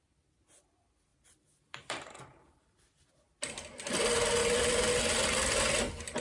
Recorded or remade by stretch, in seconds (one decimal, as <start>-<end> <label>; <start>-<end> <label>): 0.0-1.1 recorded; 1.1-3.1 remade; 3.1-4.4 recorded; 4.4-4.9 remade; 4.9-6.2 recorded